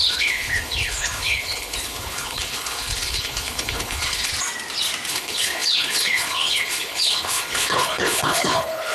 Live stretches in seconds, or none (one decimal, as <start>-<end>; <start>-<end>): 4.3-5.1